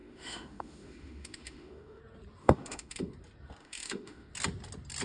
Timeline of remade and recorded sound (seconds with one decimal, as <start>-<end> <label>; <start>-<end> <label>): 0.0-2.0 remade; 2.0-2.4 recorded; 2.4-3.1 remade; 3.1-3.6 recorded; 3.6-4.3 remade; 4.3-5.0 recorded